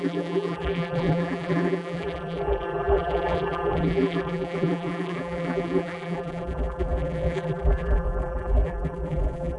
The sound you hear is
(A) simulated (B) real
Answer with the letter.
A